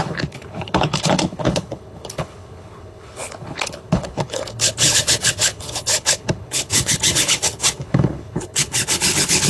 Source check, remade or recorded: remade